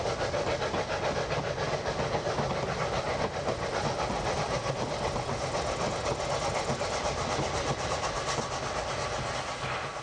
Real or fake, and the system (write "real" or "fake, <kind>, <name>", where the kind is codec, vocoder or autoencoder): real